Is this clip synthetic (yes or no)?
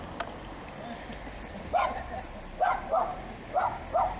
no